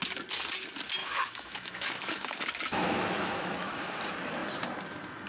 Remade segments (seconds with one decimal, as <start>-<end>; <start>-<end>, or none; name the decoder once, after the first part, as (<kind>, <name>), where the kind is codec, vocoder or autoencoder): 1.0-4.0 (autoencoder, DAC-VAE)

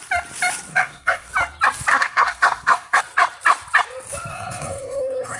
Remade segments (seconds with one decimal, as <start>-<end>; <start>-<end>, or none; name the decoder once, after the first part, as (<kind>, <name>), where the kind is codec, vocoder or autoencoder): 0.7-1.3 (codec, SNAC); 1.9-3.0; 4.3-5.4